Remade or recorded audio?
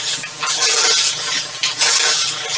recorded